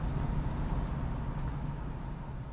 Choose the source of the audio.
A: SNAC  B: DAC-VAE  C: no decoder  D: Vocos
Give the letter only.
C